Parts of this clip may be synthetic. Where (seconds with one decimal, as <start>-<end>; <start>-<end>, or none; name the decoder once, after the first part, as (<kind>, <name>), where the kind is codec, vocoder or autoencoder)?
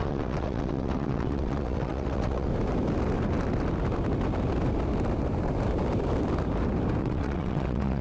0.0-2.5 (vocoder, WaveNeXt); 7.0-8.0